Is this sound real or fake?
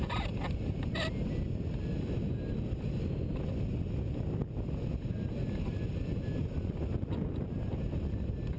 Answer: real